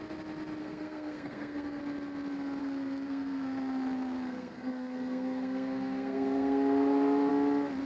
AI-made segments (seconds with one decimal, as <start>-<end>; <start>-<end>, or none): 0.6-1.8; 2.6-7.3